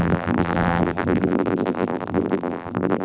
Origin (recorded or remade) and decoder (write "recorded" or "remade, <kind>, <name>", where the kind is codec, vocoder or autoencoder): remade, vocoder, BigVGAN v2